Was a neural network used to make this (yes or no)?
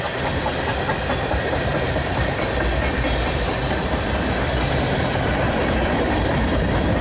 yes